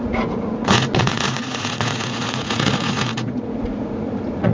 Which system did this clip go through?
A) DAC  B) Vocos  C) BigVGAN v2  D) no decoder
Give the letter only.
B